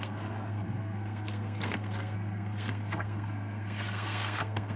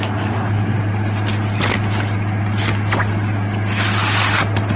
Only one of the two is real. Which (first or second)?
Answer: second